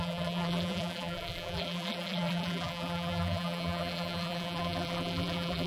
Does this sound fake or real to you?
fake